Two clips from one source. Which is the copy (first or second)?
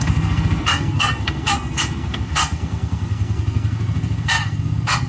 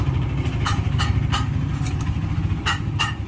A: first